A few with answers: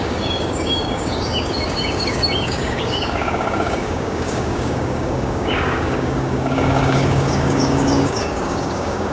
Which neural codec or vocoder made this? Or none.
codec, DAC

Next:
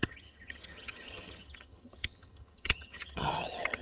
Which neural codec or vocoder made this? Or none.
vocoder, HiFi-GAN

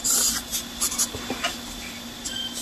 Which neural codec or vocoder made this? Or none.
none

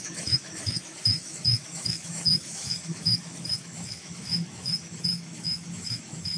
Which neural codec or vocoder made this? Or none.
autoencoder, DAC-VAE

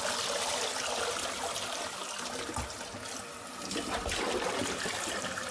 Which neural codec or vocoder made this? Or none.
none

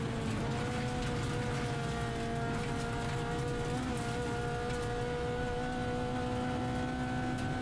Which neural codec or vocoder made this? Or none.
none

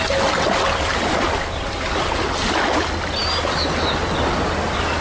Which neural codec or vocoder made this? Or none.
none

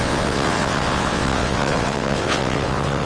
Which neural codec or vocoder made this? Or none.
vocoder, WaveNeXt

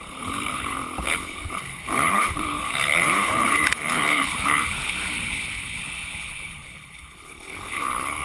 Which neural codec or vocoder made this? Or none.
codec, HILCodec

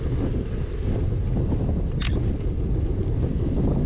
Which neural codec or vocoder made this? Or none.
none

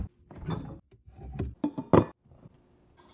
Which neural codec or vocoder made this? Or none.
none